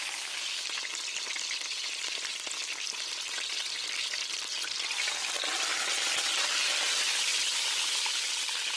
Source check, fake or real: real